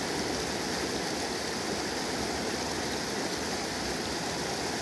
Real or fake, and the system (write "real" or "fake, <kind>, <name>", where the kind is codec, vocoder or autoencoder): real